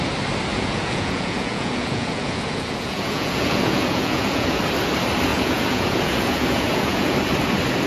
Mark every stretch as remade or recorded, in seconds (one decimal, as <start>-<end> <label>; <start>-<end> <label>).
0.0-0.5 recorded; 0.5-4.6 remade; 4.6-5.3 recorded; 5.3-7.1 remade; 7.1-7.9 recorded